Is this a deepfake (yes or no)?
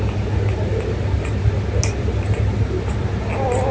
no